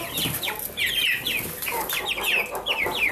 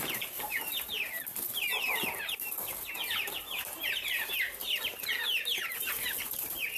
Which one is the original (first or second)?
first